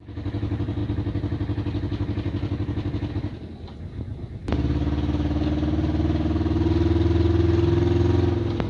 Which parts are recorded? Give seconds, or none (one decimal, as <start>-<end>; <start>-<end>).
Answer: 0.0-8.7